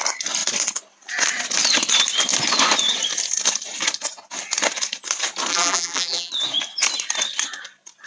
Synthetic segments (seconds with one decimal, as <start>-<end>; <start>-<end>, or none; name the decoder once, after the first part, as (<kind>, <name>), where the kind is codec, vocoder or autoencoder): 5.5-6.3 (vocoder, BigVGAN v2)

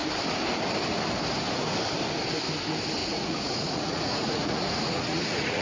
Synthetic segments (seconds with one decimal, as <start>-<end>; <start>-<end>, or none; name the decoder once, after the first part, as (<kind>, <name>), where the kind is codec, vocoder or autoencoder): 3.0-5.6 (vocoder, Vocos)

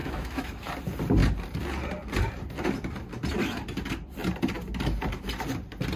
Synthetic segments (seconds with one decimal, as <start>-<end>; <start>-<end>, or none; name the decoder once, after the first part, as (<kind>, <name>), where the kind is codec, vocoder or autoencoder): 0.0-0.7 (autoencoder, DAC-VAE)

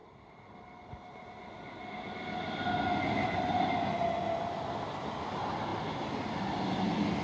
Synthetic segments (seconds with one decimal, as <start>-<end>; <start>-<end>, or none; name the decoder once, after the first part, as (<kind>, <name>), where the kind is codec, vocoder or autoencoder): 0.0-2.7 (vocoder, BigVGAN v2); 5.7-6.4

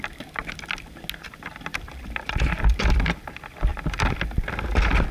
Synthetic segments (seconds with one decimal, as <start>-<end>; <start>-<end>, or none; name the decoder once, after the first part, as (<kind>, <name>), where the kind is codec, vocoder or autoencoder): 1.7-3.3 (vocoder, BigVGAN v2); 3.7-4.5

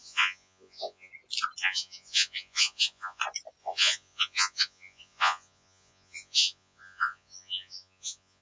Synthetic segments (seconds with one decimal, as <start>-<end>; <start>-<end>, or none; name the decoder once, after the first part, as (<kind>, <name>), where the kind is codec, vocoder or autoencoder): 0.0-1.1 (vocoder, Vocos); 1.6-3.2; 3.6-8.4

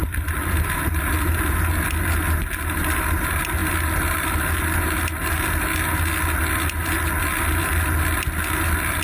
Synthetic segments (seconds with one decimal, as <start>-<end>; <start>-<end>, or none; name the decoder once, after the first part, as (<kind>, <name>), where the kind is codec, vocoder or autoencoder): 0.0-1.1 (vocoder, BigVGAN v2)